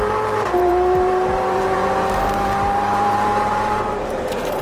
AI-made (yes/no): yes